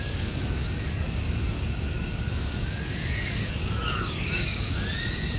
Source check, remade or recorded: remade